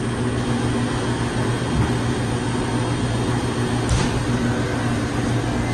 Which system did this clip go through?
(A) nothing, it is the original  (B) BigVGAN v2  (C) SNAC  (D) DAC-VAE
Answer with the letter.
A